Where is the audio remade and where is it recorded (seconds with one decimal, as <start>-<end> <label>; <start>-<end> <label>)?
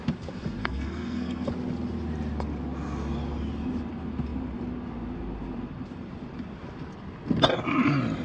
0.0-0.6 recorded; 0.6-1.5 remade; 1.5-8.2 recorded